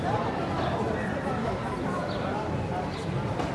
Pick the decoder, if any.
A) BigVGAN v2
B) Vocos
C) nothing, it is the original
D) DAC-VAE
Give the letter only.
A